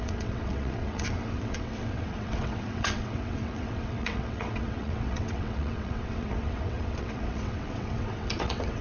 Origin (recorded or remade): remade